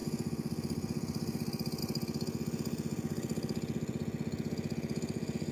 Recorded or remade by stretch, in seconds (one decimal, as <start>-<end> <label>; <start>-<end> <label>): 0.0-1.8 remade; 1.8-5.5 recorded